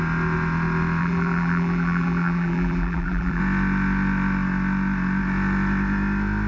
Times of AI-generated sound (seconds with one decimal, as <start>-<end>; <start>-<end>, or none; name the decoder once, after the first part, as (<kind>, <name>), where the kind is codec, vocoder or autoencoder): 1.0-3.4 (vocoder, BigVGAN v2)